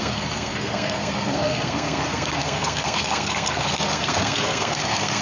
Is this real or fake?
fake